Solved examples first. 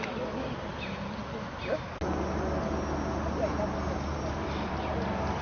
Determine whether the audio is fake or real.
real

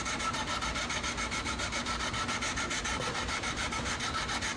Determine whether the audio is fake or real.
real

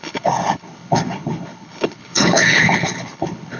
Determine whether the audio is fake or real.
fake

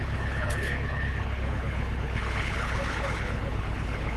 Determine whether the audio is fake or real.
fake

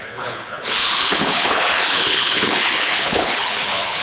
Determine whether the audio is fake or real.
fake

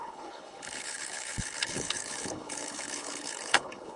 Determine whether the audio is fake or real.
fake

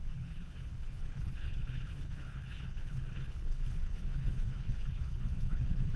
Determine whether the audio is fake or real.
fake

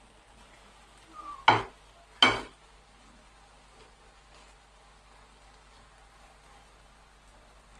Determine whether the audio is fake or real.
real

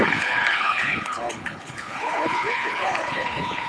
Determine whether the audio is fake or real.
fake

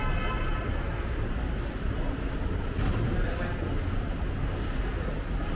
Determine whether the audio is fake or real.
real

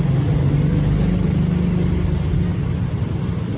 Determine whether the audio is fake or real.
real